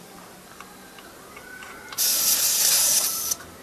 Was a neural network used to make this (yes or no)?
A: no